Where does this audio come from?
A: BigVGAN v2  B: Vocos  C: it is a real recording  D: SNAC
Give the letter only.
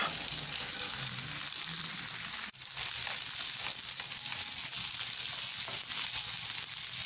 C